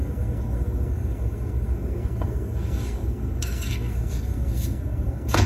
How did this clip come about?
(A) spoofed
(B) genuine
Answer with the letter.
A